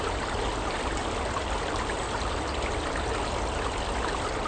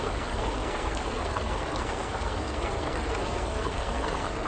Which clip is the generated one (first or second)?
second